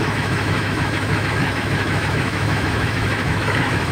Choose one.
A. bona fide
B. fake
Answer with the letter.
B